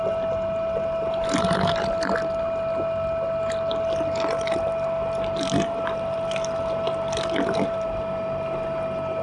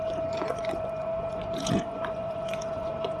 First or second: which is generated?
second